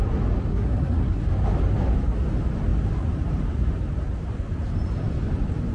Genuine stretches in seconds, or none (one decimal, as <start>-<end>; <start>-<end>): 0.0-0.5; 1.2-5.7